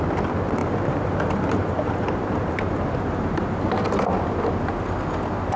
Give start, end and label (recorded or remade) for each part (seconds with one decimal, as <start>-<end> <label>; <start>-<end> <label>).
0.0-0.6 recorded; 0.6-3.6 remade; 3.6-5.6 recorded